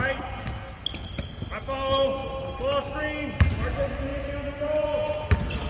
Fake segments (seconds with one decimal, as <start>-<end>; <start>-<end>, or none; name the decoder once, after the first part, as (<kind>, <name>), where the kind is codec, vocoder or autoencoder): none